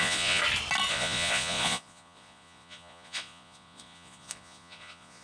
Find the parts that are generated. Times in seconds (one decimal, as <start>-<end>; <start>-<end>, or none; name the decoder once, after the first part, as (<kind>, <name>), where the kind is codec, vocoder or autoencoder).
0.0-0.4 (vocoder, Vocos); 0.9-5.2